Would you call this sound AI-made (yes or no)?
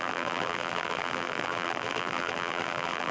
yes